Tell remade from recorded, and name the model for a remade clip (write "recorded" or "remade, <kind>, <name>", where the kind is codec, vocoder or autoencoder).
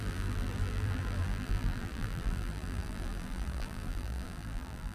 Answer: remade, vocoder, BigVGAN v2